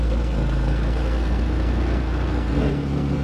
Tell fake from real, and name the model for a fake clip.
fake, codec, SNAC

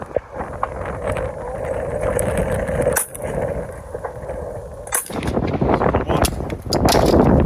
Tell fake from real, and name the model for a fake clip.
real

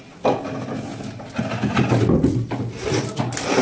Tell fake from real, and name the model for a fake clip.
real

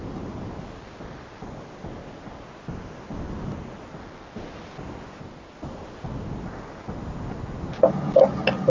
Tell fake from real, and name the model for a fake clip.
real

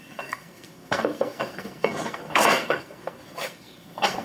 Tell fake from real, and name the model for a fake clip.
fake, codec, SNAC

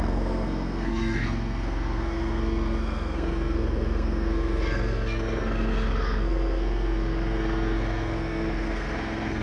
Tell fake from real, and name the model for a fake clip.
fake, codec, SNAC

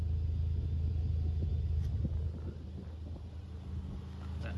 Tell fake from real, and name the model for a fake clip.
real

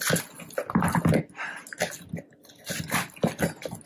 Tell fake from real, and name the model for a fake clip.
real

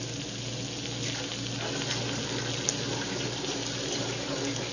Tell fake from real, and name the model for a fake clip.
real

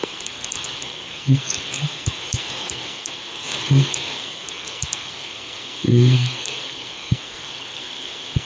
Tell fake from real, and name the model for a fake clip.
fake, codec, SNAC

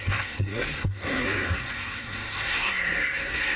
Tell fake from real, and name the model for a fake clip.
fake, codec, SNAC